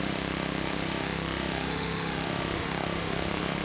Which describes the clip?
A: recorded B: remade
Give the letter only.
B